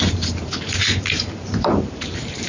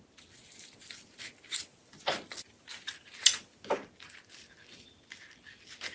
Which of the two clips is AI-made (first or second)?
first